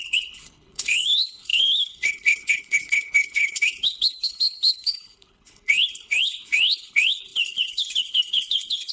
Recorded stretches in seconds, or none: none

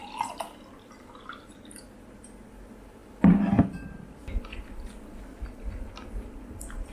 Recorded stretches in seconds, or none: 0.0-6.9